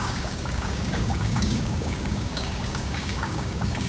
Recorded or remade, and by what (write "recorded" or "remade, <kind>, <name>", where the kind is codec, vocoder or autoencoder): remade, codec, DAC